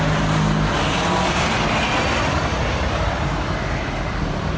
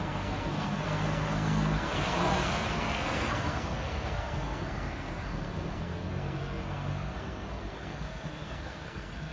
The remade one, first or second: second